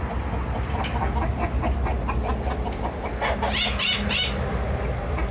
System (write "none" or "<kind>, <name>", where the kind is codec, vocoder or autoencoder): none